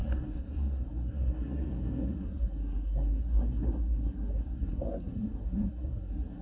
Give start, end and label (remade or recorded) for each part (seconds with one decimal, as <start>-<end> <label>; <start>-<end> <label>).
0.0-6.4 remade